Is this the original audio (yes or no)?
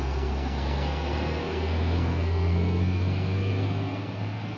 no